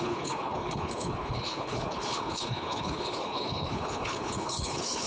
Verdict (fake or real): fake